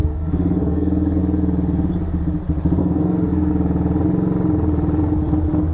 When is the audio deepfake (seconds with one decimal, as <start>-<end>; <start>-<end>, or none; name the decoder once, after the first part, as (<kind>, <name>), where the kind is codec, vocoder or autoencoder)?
0.0-1.2 (codec, SNAC); 2.8-3.5